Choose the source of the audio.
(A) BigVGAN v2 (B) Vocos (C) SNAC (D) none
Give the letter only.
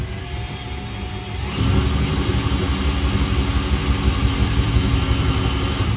D